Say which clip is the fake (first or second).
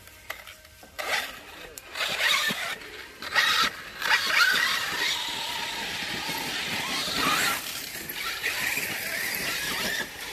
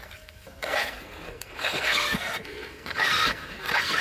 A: second